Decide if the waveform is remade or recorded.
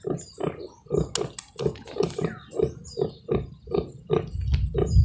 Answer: recorded